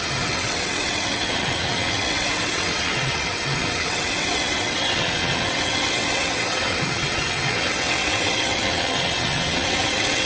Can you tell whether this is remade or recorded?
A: remade